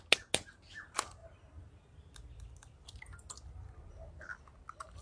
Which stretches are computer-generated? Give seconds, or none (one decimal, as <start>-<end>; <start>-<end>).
none